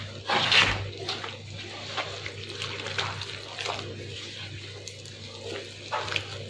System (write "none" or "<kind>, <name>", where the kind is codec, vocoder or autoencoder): none